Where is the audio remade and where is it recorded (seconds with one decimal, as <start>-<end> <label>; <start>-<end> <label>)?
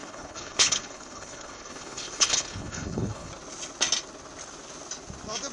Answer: 0.0-3.3 remade; 3.3-5.5 recorded